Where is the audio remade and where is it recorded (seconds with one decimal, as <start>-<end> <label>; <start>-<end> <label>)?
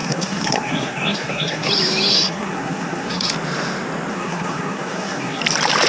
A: 0.0-1.7 remade; 1.7-2.1 recorded; 2.1-3.3 remade; 3.3-4.1 recorded; 4.1-5.4 remade; 5.4-5.9 recorded